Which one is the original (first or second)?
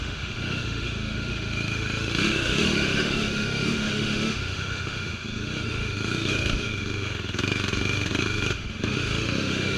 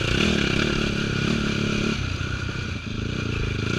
second